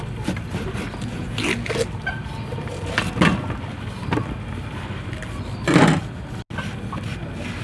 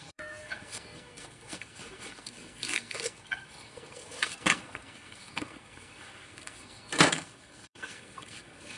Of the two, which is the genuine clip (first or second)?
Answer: first